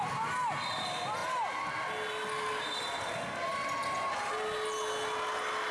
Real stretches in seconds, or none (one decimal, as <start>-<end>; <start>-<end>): 0.0-5.7